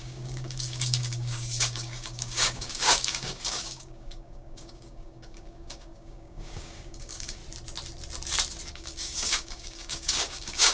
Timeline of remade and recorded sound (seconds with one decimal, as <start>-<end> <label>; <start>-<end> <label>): 0.0-7.4 remade; 7.4-8.7 recorded; 8.7-10.7 remade